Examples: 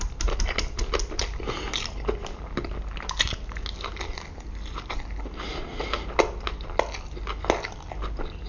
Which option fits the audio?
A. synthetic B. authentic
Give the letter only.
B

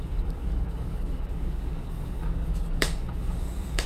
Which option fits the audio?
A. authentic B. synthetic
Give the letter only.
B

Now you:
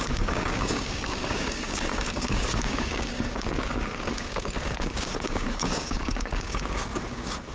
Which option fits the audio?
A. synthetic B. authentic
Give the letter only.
A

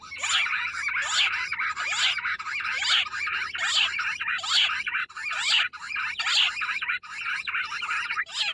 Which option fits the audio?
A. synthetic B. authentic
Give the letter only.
B